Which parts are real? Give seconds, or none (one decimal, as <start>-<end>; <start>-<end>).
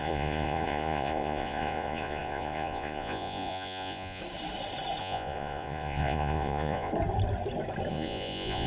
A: 4.2-5.0; 6.9-7.9